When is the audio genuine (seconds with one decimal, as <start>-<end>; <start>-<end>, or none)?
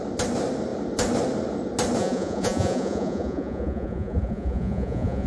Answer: 0.0-2.0